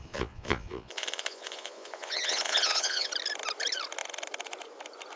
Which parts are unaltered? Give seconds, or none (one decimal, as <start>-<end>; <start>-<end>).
3.1-5.2